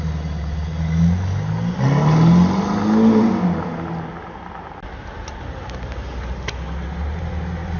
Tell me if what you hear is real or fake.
real